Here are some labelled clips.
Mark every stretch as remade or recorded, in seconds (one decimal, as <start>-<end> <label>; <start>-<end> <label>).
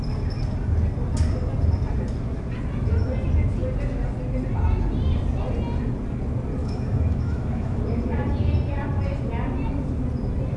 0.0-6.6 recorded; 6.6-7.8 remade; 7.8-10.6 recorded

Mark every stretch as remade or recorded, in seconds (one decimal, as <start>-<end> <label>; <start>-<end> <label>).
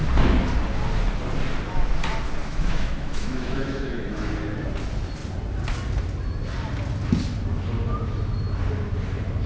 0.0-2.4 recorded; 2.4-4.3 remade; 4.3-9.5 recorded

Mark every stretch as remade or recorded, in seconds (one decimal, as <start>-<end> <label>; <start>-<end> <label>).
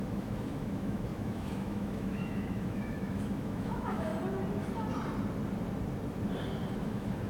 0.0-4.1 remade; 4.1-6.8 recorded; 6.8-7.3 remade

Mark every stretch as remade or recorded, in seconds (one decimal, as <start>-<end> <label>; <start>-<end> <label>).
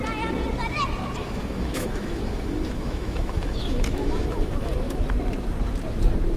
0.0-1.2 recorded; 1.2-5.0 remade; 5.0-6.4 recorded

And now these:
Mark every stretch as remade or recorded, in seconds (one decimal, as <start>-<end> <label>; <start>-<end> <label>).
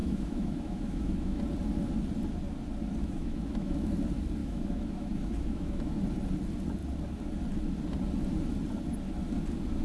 0.0-1.4 remade; 1.4-3.0 recorded; 3.0-3.9 remade; 3.9-4.4 recorded; 4.4-6.0 remade; 6.0-9.8 recorded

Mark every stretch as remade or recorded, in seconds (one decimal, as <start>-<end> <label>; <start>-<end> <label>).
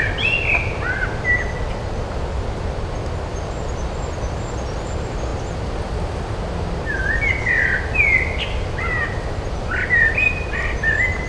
0.0-11.3 recorded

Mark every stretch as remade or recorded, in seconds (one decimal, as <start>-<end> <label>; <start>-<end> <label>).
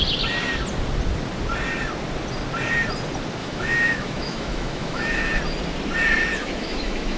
0.0-3.4 recorded; 3.4-5.4 remade; 5.4-6.3 recorded; 6.3-7.2 remade